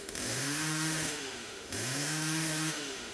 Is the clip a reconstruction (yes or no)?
yes